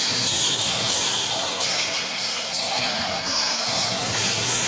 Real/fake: fake